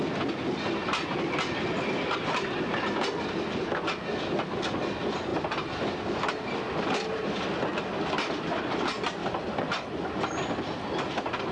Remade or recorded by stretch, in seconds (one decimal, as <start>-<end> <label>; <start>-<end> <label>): 0.0-9.2 recorded; 9.2-9.7 remade; 9.7-11.5 recorded